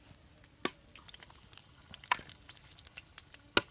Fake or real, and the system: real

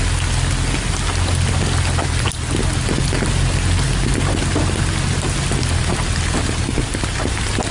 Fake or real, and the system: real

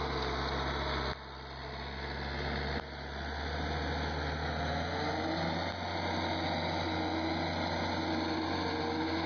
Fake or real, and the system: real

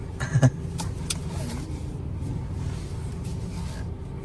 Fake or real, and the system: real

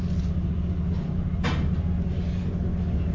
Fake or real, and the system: real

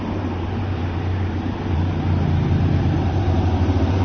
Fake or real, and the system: fake, vocoder, BigVGAN v2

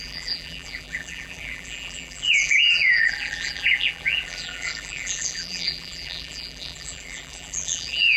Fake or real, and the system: fake, vocoder, BigVGAN v2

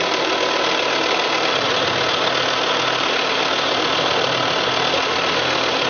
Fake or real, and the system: real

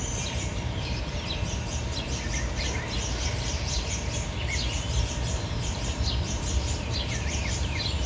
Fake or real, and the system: fake, vocoder, BigVGAN v2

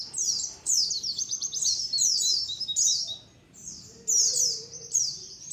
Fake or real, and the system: fake, vocoder, BigVGAN v2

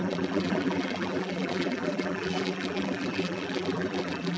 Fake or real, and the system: fake, vocoder, BigVGAN v2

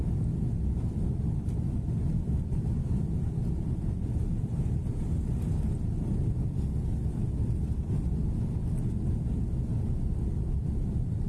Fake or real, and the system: real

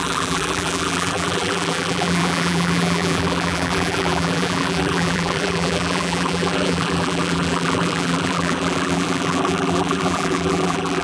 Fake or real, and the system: fake, vocoder, BigVGAN v2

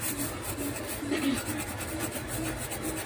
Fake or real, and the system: real